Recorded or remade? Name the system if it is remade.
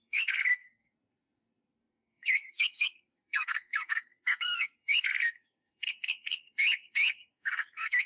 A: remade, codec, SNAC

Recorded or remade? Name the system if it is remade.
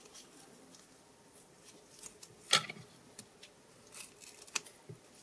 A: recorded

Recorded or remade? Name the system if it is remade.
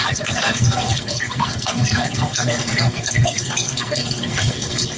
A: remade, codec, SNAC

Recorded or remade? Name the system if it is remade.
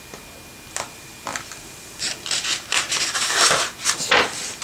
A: recorded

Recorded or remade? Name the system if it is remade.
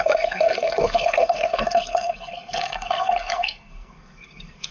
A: remade, codec, SNAC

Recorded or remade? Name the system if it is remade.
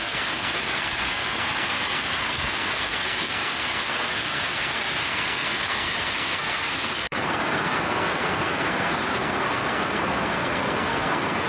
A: remade, codec, SNAC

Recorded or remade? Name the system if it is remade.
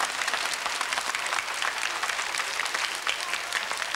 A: recorded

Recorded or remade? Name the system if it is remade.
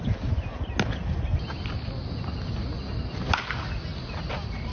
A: recorded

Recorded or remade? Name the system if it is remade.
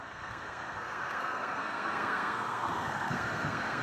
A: remade, codec, SNAC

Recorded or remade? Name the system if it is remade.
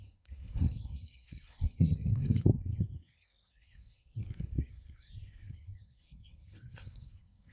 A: remade, codec, SNAC